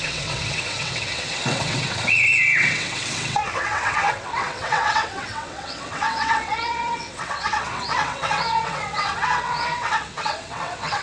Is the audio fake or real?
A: fake